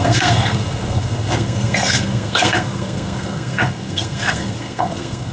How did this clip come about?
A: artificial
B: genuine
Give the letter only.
A